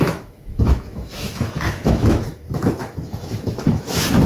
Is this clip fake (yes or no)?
yes